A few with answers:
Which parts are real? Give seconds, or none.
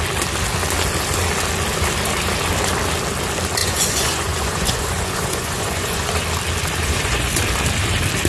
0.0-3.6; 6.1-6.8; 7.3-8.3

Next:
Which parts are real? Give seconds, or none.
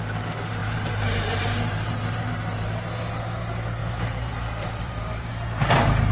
0.0-0.6; 2.3-3.8; 5.3-6.1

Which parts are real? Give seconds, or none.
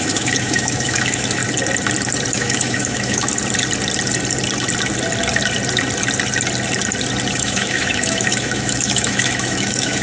1.4-2.3; 3.3-7.3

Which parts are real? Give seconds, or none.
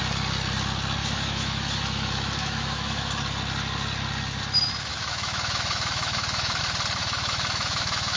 0.0-1.0; 3.1-4.9; 6.6-7.0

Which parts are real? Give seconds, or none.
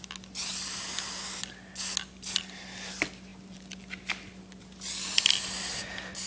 0.0-6.3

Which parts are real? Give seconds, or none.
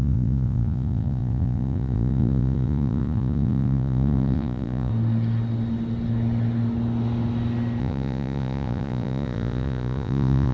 4.9-7.8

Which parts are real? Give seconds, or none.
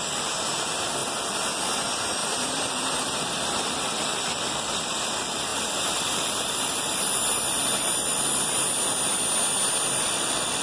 0.0-2.2; 3.2-5.5; 7.1-10.6